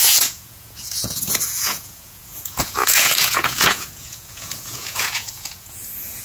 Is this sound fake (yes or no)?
yes